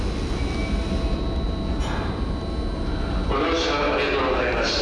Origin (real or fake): real